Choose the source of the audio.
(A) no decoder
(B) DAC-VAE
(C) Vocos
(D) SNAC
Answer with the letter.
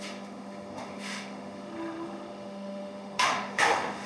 B